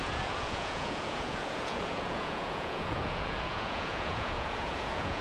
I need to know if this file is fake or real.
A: fake